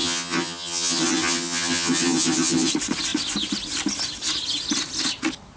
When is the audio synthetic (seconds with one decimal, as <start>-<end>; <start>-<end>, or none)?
0.0-2.7